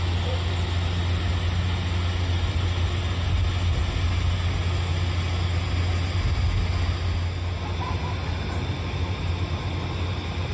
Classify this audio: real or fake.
real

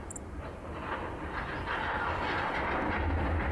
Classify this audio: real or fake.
real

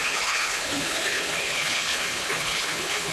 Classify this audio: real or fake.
fake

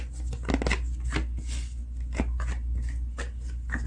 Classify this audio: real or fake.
real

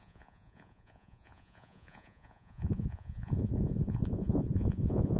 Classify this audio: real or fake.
fake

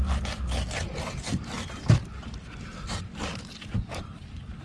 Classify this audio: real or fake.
real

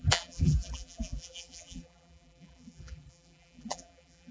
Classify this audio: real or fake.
fake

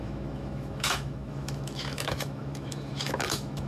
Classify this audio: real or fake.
fake